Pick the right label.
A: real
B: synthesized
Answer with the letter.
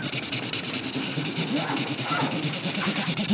A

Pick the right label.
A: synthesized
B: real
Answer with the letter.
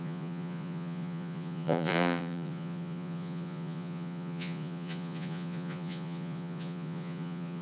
A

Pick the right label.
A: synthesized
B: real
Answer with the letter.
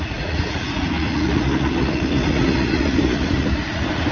A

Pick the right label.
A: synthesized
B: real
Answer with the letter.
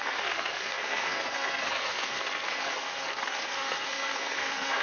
A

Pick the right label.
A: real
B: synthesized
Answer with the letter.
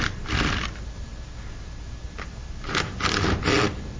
A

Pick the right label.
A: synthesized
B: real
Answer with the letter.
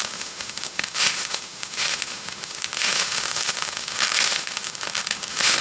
A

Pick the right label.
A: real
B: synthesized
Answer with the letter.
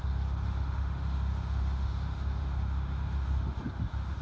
B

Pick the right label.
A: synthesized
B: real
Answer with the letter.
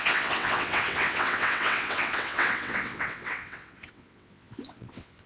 A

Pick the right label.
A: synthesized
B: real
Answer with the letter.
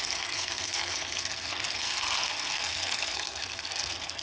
A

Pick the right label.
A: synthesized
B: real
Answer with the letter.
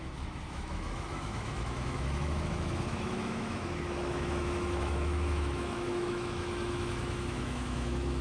A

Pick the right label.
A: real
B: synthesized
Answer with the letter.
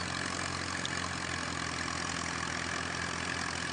A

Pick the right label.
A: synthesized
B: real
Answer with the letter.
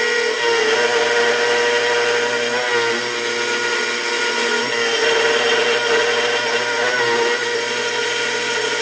B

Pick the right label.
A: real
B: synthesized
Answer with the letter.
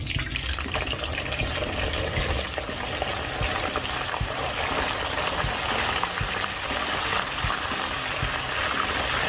A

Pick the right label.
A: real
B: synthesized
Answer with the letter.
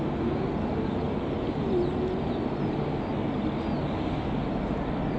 A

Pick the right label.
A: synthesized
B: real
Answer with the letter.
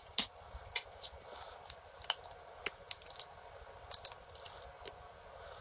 B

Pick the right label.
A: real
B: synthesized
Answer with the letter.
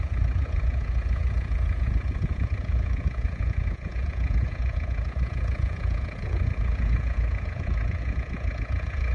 B